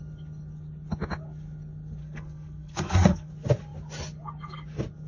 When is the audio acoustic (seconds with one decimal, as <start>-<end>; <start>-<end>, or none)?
0.0-2.0; 3.3-5.1